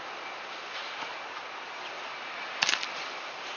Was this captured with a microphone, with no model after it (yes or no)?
yes